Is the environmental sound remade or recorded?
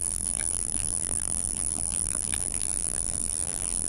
remade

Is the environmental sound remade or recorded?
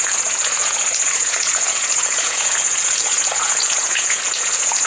remade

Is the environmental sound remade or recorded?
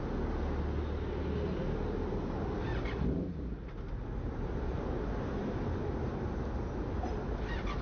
recorded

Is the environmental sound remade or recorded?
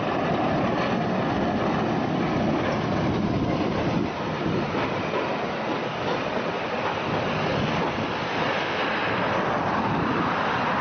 recorded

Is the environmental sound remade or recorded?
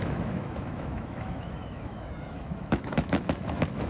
remade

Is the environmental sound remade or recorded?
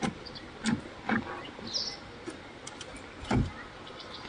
recorded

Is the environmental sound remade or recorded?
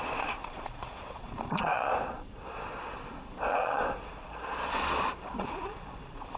remade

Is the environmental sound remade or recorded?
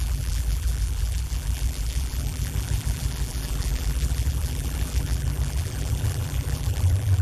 remade